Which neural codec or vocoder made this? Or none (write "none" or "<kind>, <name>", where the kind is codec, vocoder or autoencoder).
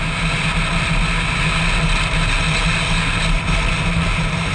none